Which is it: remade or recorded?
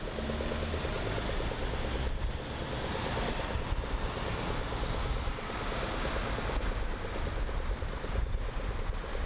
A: recorded